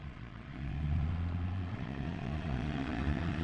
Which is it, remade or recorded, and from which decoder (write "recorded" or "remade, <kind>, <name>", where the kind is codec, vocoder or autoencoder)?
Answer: remade, vocoder, Vocos